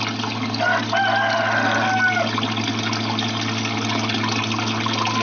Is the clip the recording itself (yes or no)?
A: yes